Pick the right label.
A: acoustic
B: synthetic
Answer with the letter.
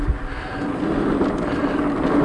A